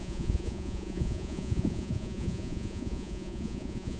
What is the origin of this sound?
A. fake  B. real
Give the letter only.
A